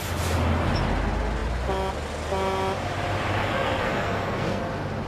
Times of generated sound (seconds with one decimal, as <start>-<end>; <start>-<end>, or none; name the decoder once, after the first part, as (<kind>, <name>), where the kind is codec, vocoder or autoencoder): 3.4-4.6 (codec, SNAC)